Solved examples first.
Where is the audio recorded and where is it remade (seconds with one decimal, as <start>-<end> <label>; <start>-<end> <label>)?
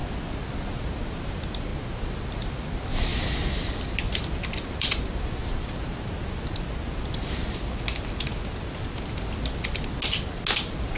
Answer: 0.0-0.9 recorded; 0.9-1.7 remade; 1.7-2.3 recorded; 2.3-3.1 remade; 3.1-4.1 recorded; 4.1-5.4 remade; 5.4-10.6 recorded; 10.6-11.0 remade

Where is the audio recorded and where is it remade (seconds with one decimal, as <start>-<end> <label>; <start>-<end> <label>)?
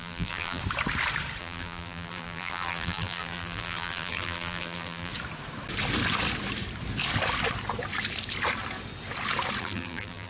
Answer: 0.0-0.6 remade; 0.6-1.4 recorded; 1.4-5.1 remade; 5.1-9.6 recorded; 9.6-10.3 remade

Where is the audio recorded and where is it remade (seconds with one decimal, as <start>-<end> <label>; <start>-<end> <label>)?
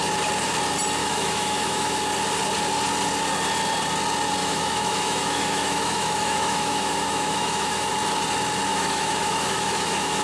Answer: 0.0-1.0 recorded; 1.0-2.0 remade; 2.0-4.4 recorded; 4.4-7.9 remade; 7.9-8.7 recorded; 8.7-10.2 remade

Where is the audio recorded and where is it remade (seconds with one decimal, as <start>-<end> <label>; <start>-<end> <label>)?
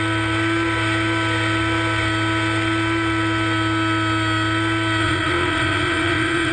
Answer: 0.0-5.0 recorded; 5.0-6.5 remade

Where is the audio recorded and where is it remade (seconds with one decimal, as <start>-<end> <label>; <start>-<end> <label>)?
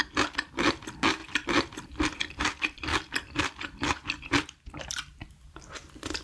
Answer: 0.0-6.2 remade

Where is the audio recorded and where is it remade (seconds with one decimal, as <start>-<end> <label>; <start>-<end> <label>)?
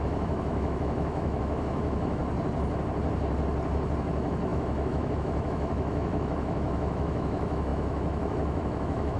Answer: 0.0-2.2 remade; 2.2-4.1 recorded; 4.1-9.2 remade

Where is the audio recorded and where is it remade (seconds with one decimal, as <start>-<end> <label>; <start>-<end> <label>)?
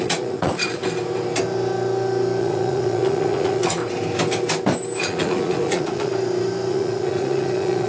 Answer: 0.0-0.8 remade; 0.8-2.4 recorded; 2.4-3.8 remade; 3.8-5.0 recorded; 5.0-6.1 remade; 6.1-6.7 recorded; 6.7-7.9 remade